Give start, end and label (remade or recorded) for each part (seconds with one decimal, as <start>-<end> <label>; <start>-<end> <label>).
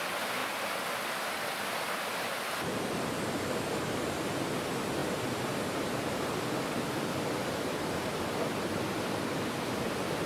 0.0-10.3 recorded